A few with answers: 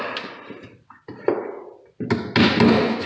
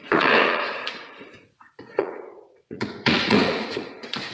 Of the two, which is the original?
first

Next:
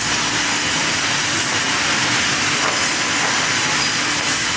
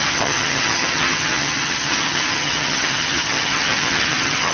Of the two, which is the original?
first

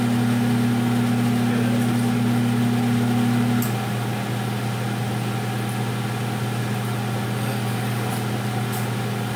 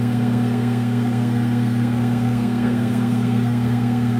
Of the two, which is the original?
first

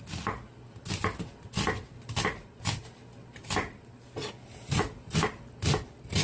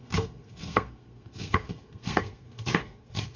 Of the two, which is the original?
first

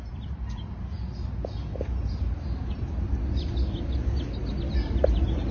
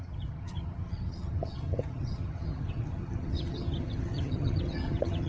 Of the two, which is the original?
first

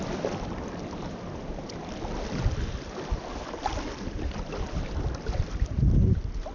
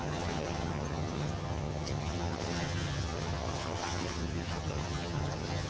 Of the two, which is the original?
first